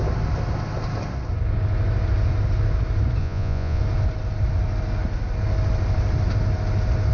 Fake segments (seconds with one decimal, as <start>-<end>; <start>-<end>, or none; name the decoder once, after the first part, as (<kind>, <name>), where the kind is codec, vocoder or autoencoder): 3.2-3.8 (vocoder, Vocos)